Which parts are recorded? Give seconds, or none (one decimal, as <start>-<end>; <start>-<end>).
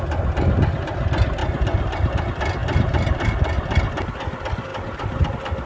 0.0-2.6; 3.3-4.7; 5.3-5.7